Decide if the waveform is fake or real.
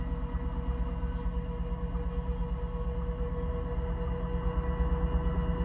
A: real